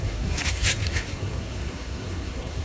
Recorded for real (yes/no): no